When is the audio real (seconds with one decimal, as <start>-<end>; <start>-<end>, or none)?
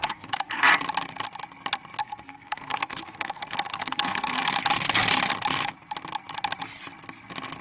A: 0.6-2.0; 4.5-7.6